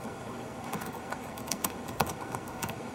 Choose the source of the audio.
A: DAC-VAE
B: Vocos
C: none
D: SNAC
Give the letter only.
D